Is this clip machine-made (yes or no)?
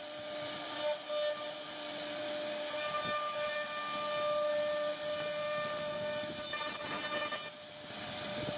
no